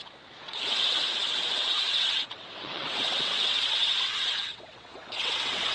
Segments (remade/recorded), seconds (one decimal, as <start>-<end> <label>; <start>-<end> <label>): 0.0-5.7 remade